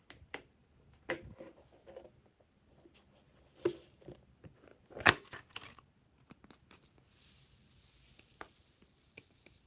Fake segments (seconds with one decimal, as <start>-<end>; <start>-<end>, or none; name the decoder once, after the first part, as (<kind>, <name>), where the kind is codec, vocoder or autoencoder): none